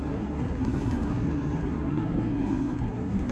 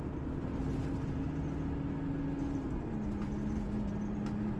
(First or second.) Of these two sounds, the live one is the second